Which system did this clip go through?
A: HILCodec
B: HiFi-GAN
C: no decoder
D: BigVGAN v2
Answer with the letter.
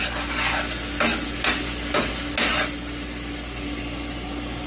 C